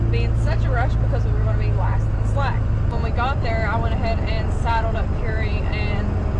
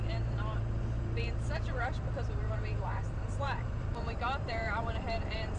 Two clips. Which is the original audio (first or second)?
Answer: first